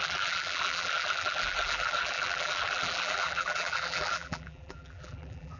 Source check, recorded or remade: remade